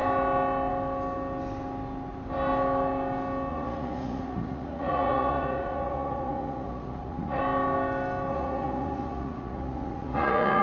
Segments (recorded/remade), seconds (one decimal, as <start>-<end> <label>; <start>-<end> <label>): 0.0-3.5 recorded; 3.5-7.4 remade; 7.4-8.3 recorded; 8.3-10.6 remade